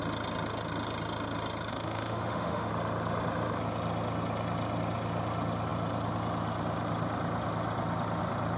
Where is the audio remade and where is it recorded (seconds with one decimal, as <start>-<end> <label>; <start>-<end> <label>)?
0.0-1.7 recorded; 1.7-2.7 remade; 2.7-8.6 recorded